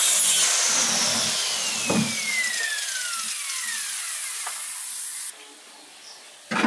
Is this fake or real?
real